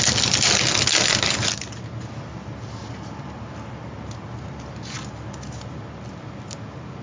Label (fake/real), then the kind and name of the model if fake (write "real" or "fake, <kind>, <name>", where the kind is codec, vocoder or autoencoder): real